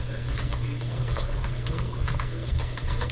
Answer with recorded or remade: remade